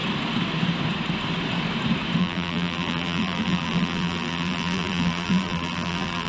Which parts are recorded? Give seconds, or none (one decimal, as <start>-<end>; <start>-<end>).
0.0-2.2